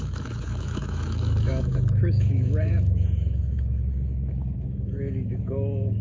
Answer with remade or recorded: remade